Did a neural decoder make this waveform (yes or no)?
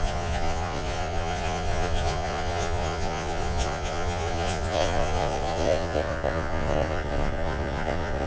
yes